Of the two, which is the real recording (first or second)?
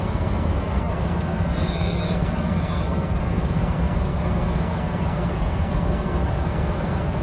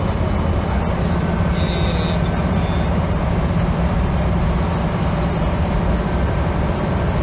second